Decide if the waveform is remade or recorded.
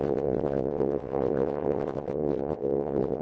remade